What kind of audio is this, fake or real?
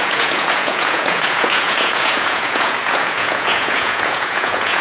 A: fake